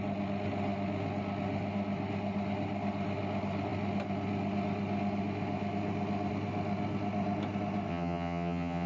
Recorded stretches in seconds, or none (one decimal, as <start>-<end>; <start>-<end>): 0.0-7.9